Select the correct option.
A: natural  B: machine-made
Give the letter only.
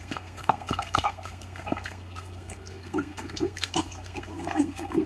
B